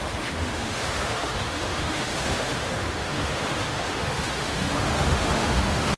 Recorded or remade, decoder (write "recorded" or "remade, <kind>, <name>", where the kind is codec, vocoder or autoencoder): remade, autoencoder, DAC-VAE